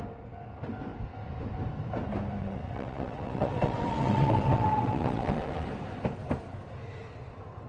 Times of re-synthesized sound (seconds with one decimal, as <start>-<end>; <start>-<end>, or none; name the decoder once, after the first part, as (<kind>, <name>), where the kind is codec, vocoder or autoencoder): 2.4-5.7 (vocoder, WaveNeXt)